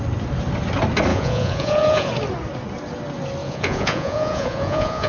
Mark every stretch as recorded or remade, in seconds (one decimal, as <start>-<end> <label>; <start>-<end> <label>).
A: 0.0-1.1 recorded; 1.1-2.1 remade; 2.1-3.4 recorded; 3.4-5.1 remade